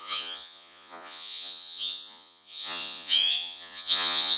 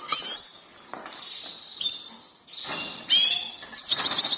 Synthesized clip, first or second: first